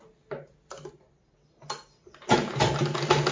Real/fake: real